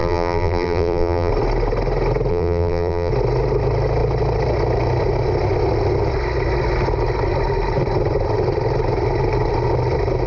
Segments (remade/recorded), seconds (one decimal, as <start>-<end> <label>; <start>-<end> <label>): 0.0-1.3 remade; 1.3-2.3 recorded; 2.3-3.1 remade; 3.1-10.3 recorded